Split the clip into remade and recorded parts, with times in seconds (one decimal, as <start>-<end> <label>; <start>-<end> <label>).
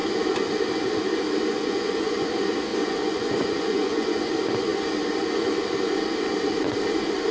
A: 0.0-1.5 recorded; 1.5-2.3 remade; 2.3-2.7 recorded; 2.7-4.3 remade; 4.3-7.3 recorded